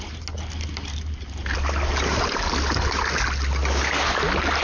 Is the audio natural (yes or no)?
yes